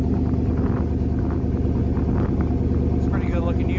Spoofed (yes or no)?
no